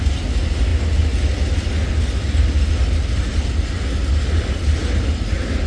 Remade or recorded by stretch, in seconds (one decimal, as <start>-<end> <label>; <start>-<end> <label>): 0.0-5.7 recorded